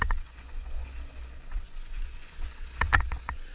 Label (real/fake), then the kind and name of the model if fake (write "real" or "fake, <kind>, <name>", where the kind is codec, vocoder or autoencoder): fake, vocoder, Vocos